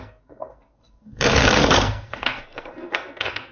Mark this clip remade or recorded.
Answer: remade